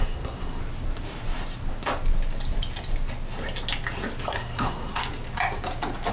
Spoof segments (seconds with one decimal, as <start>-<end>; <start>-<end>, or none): 0.0-0.6; 4.3-5.0